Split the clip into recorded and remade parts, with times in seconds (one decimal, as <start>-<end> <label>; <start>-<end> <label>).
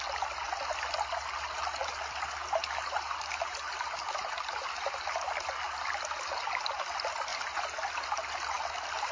0.0-9.1 recorded